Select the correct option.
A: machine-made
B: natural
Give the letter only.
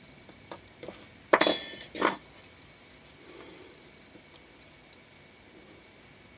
B